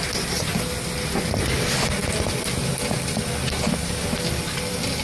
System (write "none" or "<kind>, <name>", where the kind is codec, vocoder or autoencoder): none